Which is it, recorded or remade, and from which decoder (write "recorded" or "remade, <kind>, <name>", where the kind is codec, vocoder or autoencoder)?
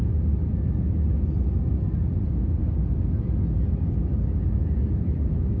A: recorded